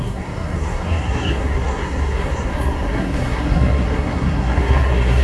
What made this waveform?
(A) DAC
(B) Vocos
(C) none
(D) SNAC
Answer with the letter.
D